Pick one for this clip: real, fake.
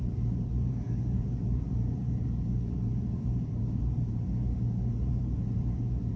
fake